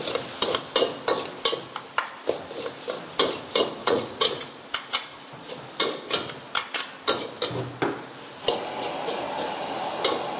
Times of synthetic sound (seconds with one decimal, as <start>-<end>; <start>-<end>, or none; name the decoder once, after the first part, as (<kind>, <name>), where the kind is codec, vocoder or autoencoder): 3.8-5.5 (vocoder, Vocos)

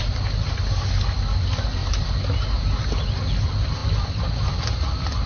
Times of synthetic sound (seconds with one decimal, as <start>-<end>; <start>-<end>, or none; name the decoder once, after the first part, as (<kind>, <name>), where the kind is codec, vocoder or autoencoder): none

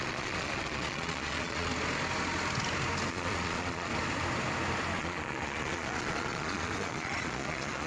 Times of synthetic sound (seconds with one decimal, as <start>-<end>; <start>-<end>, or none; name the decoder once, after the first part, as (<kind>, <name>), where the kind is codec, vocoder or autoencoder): 0.0-1.7 (vocoder, Vocos); 3.1-3.9; 5.0-7.9

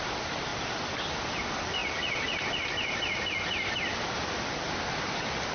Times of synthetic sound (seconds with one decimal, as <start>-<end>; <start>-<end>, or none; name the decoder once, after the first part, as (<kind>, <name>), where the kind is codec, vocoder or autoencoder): 0.0-0.5 (vocoder, BigVGAN v2); 1.1-1.8; 3.9-5.5

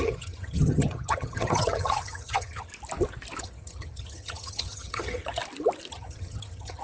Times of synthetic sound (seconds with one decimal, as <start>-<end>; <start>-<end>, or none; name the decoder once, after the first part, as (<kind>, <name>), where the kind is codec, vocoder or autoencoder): 0.0-2.7 (vocoder, HiFi-GAN); 3.4-5.4; 5.9-6.8

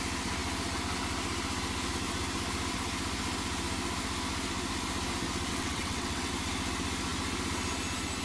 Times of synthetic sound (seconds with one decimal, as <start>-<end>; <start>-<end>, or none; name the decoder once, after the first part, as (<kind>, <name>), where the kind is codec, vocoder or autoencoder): 5.5-6.3 (vocoder, WaveNeXt)